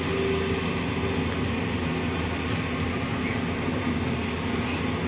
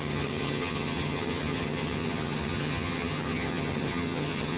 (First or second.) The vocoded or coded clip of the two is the second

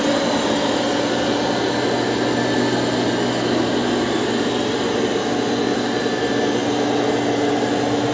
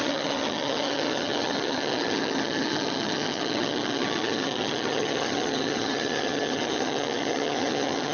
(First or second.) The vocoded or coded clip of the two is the second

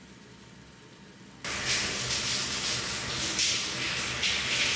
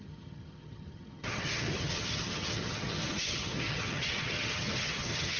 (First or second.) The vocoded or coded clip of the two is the second